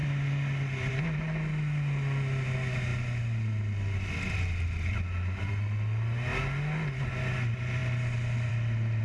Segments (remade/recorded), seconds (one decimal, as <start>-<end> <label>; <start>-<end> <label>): 0.0-9.0 recorded